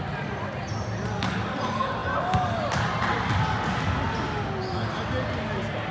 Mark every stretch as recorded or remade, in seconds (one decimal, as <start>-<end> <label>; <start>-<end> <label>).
0.0-5.9 recorded